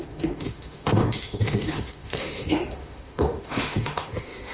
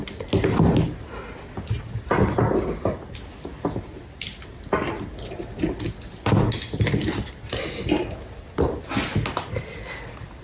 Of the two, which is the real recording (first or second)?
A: second